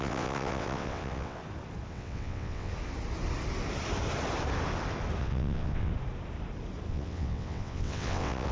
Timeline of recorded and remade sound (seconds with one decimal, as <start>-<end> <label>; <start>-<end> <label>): 0.0-1.4 remade; 1.4-1.9 recorded; 1.9-2.7 remade; 2.7-5.2 recorded; 5.2-5.9 remade; 5.9-6.9 recorded; 6.9-8.5 remade